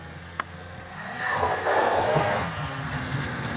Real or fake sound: fake